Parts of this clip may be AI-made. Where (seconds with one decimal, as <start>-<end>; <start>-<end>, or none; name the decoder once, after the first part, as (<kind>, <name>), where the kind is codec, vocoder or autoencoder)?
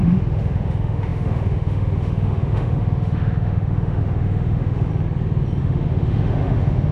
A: 0.0-4.9 (autoencoder, DAC-VAE); 5.6-6.9